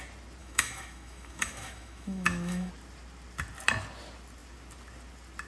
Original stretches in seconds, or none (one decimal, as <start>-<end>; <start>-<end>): 0.0-0.4; 2.7-5.5